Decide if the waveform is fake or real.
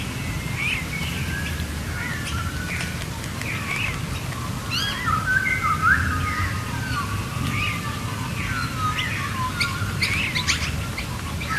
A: real